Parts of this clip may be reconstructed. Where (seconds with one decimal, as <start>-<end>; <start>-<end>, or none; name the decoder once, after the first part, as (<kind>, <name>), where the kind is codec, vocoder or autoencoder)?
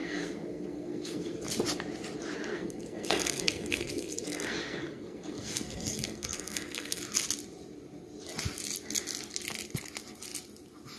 0.0-1.4 (codec, SNAC); 2.5-7.0